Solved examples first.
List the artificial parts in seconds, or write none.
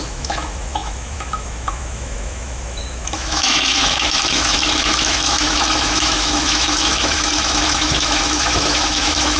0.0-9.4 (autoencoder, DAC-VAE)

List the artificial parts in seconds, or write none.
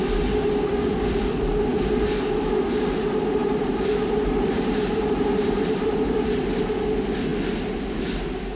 3.4-6.6 (vocoder, BigVGAN v2)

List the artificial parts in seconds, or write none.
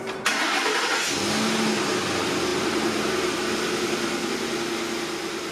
2.5-4.3 (vocoder, BigVGAN v2)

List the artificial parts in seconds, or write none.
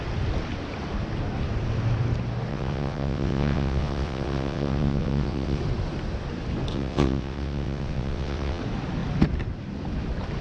2.5-5.6 (vocoder, WaveNeXt); 6.7-8.6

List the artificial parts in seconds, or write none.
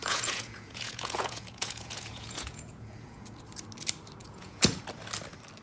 0.0-3.4 (vocoder, Vocos); 4.2-4.8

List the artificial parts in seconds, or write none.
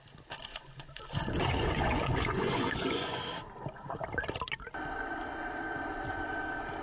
0.5-3.2 (vocoder, Vocos)